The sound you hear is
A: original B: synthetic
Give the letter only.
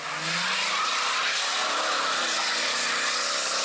A